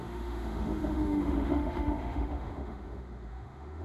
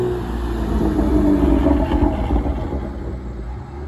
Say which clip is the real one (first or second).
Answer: second